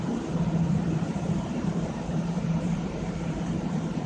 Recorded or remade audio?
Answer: remade